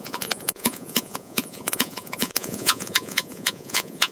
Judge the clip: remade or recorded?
remade